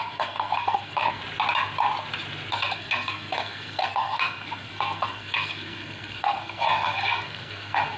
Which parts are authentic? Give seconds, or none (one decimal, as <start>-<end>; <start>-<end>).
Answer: 1.2-2.5